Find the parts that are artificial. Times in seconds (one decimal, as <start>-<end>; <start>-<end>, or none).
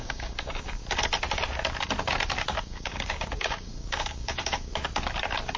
0.0-0.8; 2.6-4.7